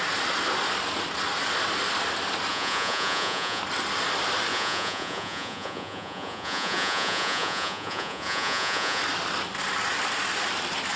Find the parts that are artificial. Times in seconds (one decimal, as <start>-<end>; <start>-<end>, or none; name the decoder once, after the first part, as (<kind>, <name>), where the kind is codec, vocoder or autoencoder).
2.5-3.6 (vocoder, Vocos); 4.5-9.0